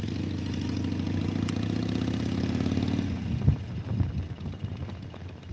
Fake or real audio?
real